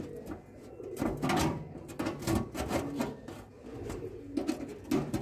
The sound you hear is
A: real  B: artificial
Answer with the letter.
A